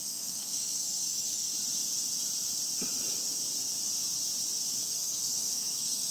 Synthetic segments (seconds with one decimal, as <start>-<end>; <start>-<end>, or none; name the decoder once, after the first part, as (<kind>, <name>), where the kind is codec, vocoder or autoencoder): 0.0-1.5 (codec, SNAC); 4.8-6.1